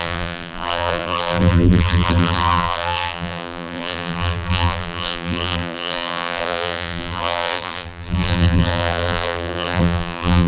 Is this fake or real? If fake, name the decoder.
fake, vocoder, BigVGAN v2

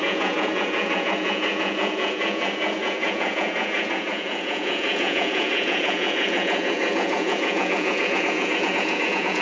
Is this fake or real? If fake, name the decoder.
fake, vocoder, Vocos